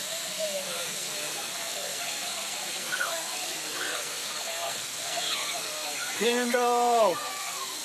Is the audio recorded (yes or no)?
no